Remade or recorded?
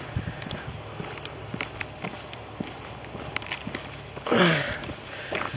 recorded